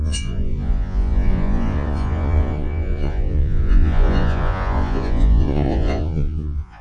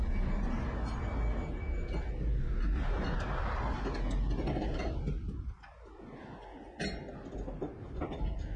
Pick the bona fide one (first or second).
second